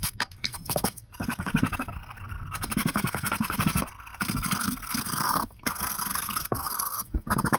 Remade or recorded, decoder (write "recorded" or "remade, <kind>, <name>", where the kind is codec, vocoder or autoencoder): remade, codec, SNAC